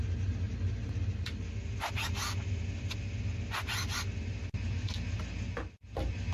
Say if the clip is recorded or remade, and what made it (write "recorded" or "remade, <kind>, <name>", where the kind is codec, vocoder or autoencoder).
recorded